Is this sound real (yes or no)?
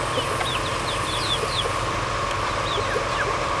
yes